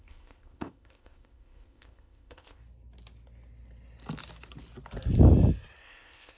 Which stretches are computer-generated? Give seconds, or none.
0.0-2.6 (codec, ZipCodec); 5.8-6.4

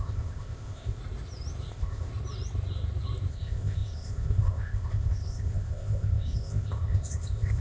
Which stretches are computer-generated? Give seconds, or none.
0.0-1.0 (codec, ZipCodec); 1.7-2.1; 3.3-7.6